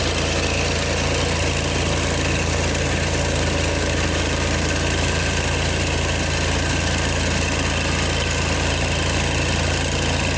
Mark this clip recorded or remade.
recorded